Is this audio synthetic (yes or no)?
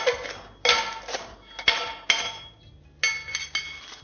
no